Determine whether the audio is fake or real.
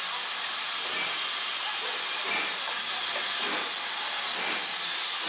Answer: real